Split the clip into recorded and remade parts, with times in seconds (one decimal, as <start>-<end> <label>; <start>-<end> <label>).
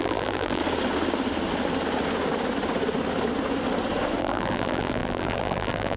0.0-0.6 remade; 0.6-4.2 recorded; 4.2-6.0 remade